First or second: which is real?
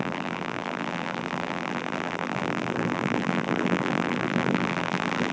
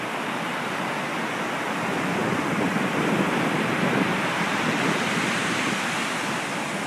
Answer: second